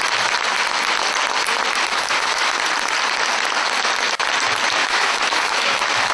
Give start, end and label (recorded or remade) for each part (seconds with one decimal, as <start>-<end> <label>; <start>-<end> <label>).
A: 0.0-1.9 recorded; 1.9-2.6 remade; 2.6-4.8 recorded; 4.8-6.1 remade